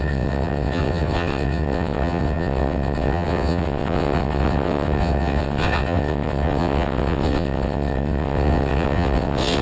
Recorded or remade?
remade